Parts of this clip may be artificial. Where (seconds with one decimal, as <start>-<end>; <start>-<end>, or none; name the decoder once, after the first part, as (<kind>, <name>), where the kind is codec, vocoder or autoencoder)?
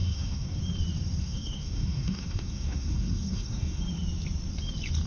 0.0-0.6 (codec, SNAC); 1.2-3.8